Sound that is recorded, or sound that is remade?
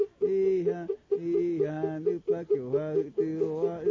recorded